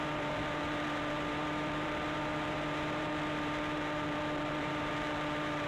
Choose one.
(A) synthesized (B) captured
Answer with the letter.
A